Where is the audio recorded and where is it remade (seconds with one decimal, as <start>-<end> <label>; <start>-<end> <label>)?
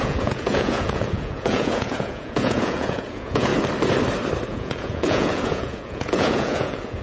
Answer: 0.0-3.5 remade; 3.5-4.5 recorded; 4.5-7.0 remade